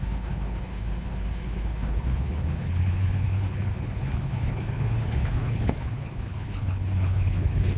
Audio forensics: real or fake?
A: fake